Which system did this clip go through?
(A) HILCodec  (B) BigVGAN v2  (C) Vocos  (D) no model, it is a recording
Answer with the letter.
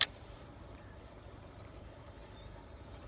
B